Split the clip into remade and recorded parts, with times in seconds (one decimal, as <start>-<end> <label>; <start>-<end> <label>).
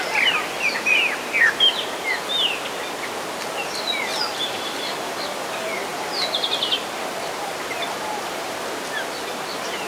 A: 0.0-9.9 recorded